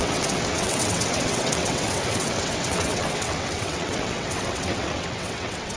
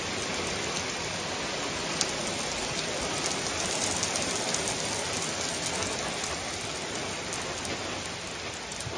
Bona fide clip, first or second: second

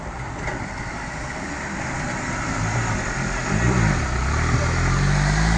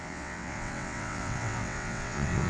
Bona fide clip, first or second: first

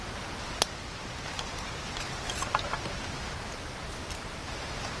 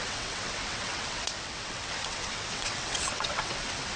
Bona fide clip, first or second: first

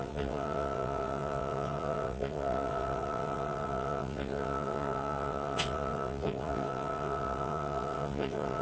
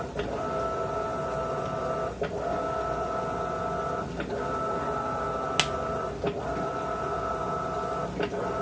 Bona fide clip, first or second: second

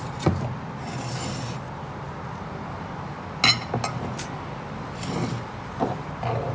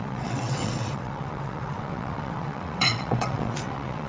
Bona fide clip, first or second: first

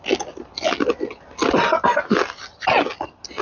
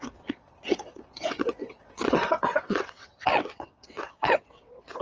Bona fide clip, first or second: first